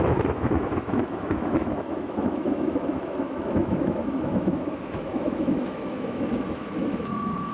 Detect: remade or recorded remade